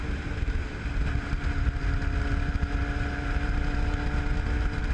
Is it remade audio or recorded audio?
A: recorded